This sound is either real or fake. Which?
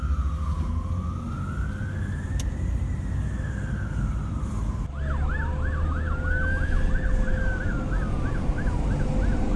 real